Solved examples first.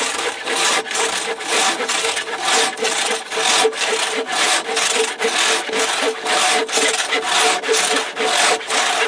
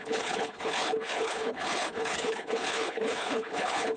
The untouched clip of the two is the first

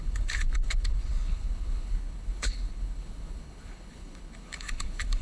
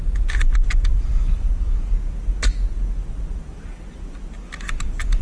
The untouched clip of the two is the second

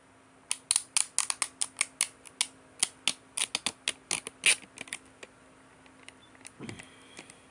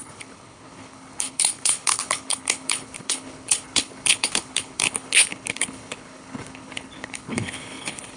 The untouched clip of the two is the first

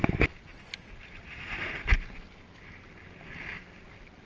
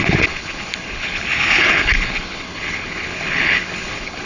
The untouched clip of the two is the first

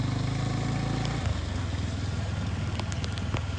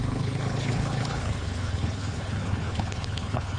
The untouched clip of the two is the first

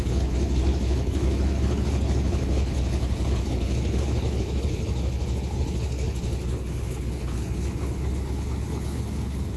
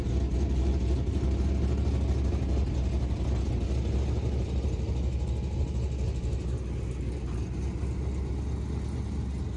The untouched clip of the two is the second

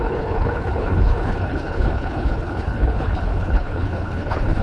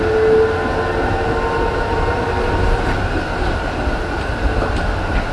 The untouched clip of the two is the second